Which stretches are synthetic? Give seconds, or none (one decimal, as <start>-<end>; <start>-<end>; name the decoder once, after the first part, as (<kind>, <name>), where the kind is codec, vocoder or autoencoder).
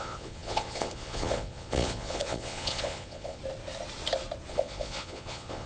0.0-3.4 (vocoder, Vocos); 4.5-5.7